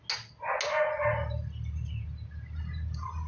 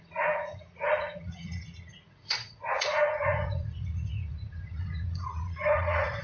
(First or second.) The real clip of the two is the first